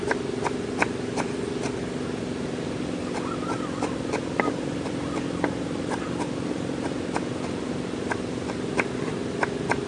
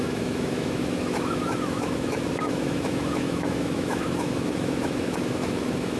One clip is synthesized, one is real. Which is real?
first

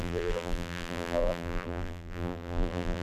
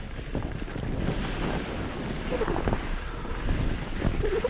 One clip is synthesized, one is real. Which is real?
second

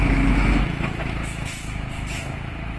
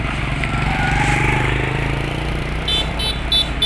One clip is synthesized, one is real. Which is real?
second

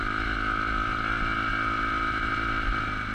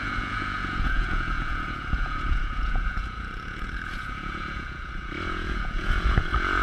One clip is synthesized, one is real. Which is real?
first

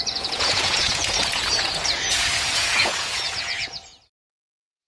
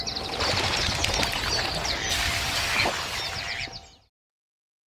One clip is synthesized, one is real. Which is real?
second